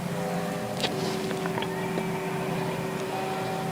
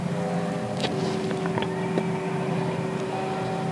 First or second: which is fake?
second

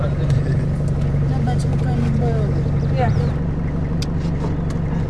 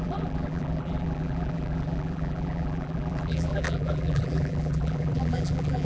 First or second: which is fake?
second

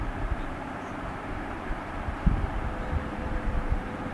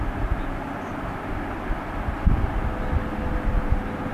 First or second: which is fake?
first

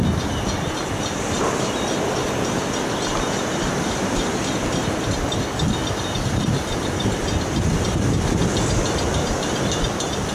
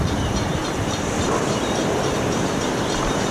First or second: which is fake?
second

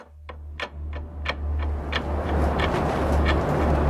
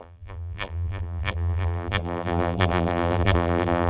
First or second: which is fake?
second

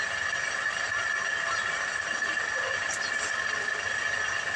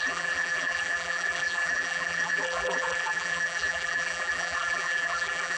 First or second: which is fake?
second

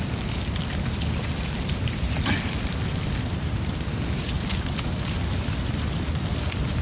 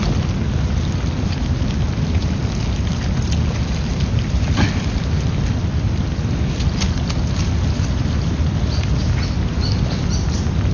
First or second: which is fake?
first